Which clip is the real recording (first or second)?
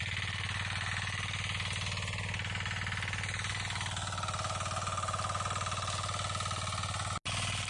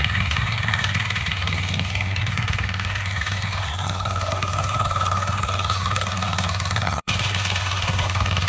first